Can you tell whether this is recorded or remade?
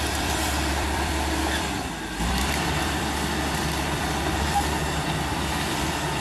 remade